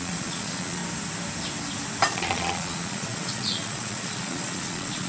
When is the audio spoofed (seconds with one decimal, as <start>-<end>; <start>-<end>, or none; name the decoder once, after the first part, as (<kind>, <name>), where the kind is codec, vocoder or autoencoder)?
0.0-0.8 (vocoder, Vocos); 2.1-5.1